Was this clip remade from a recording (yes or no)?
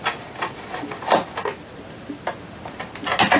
no